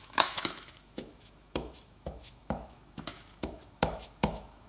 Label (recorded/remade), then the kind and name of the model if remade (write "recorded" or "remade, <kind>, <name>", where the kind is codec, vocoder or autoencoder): remade, autoencoder, DAC-VAE